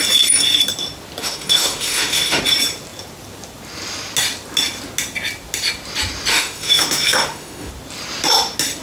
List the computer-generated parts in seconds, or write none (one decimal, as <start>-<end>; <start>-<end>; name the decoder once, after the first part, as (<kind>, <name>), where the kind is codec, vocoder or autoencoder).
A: 1.2-2.4 (autoencoder, DAC-VAE); 6.3-7.7